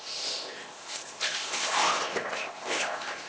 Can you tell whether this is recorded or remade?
remade